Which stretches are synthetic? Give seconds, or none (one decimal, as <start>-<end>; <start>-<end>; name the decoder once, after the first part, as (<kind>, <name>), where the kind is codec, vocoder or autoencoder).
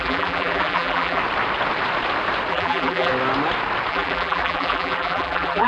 0.0-1.2 (vocoder, BigVGAN v2); 2.5-3.1; 3.9-5.7